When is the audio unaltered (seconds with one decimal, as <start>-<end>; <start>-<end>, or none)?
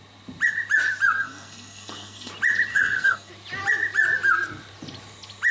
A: 0.0-1.2; 2.3-2.7; 3.3-5.5